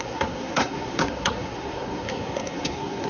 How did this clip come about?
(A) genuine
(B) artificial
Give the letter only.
B